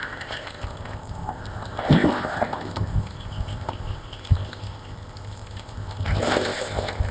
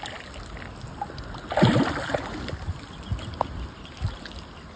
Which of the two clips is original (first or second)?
second